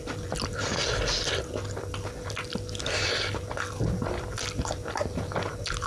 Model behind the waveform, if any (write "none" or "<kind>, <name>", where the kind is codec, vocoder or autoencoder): none